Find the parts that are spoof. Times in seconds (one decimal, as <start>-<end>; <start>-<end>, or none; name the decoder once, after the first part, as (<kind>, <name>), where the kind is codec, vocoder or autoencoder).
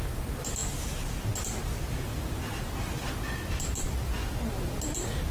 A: 2.1-4.0 (vocoder, BigVGAN v2)